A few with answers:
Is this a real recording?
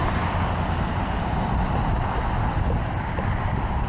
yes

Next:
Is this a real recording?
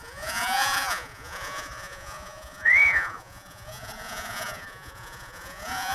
no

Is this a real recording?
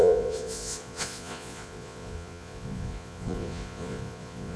no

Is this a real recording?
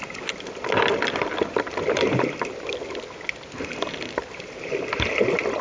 yes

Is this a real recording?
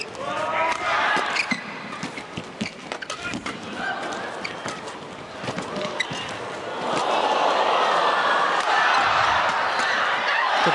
yes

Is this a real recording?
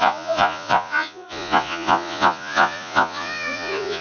no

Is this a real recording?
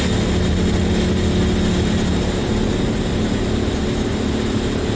yes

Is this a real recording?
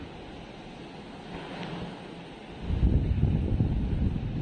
yes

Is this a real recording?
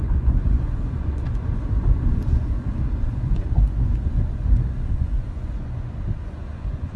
no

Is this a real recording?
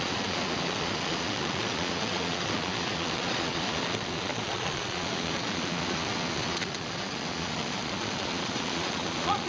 no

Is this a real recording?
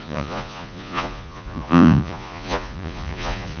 no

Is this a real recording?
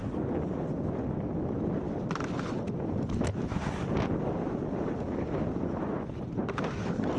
yes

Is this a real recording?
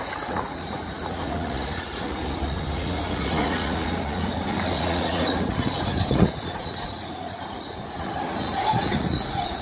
no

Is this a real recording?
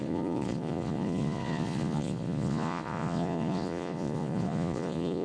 no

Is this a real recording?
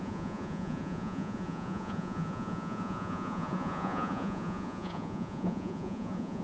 no